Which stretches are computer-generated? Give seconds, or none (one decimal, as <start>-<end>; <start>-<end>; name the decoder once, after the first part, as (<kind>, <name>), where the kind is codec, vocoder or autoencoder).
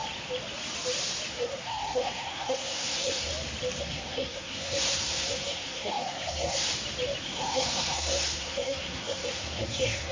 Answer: 1.3-3.3 (codec, SNAC); 3.8-6.7; 7.2-10.1